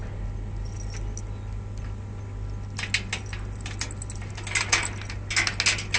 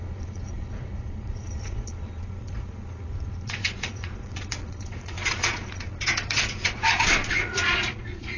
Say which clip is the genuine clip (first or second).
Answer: first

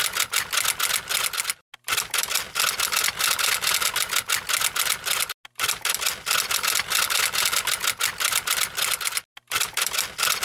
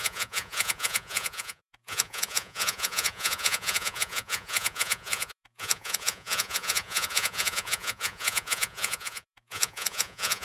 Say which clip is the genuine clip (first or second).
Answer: first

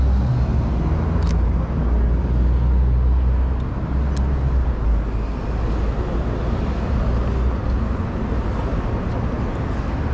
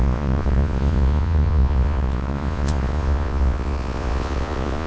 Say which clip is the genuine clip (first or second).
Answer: first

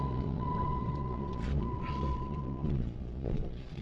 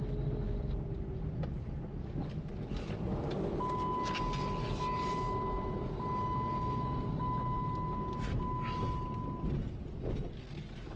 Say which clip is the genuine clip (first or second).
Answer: second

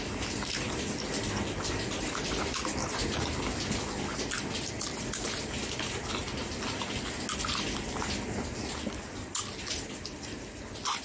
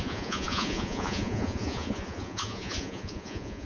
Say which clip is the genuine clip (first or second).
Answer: first